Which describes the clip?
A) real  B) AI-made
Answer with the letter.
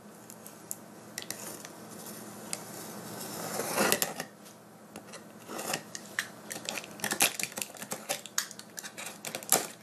A